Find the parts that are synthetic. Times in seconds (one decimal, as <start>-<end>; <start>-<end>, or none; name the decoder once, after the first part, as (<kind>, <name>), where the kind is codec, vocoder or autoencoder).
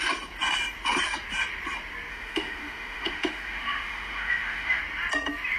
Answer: 2.1-4.8 (autoencoder, DAC-VAE)